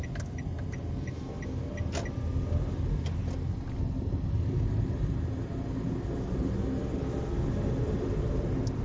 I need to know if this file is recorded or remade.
recorded